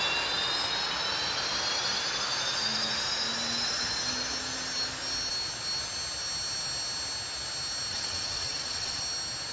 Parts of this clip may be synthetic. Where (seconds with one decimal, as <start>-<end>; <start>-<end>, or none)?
7.9-9.0